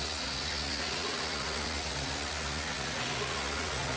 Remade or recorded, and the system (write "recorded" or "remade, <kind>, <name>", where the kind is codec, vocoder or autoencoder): remade, vocoder, Vocos